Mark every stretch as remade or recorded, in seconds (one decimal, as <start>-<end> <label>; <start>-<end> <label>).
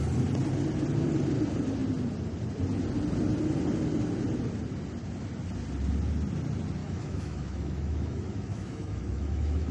0.0-6.8 recorded; 6.8-9.7 remade